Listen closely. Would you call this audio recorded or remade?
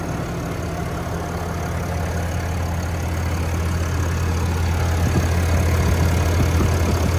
recorded